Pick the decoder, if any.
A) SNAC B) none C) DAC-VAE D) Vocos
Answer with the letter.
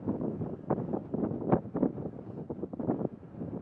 B